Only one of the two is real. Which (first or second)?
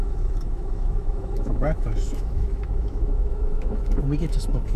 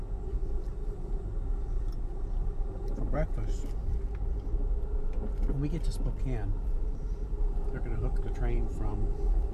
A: second